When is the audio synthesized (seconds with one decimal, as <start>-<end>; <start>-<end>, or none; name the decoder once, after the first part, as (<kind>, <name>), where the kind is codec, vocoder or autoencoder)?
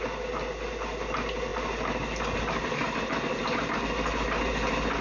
none